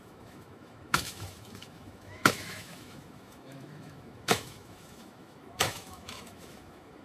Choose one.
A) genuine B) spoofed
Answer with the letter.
B